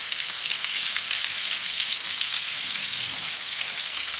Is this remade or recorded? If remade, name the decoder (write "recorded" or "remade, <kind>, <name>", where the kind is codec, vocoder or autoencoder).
remade, codec, SNAC